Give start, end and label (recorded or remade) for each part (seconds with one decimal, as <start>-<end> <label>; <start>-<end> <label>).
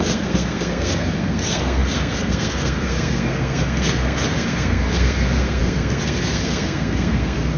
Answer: 0.0-7.6 remade